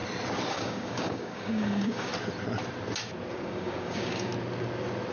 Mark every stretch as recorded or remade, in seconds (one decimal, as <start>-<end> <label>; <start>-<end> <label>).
0.0-0.5 recorded; 0.5-2.1 remade; 2.1-3.3 recorded; 3.3-4.3 remade; 4.3-5.1 recorded